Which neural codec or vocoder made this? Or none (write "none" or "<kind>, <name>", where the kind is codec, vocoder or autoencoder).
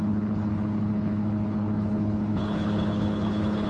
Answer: codec, HILCodec